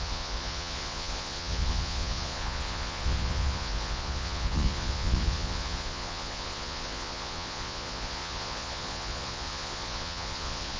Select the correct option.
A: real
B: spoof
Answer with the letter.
B